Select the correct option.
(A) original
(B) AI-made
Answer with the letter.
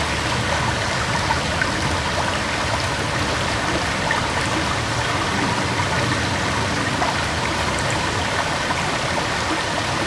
A